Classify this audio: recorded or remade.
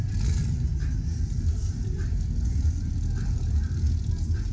remade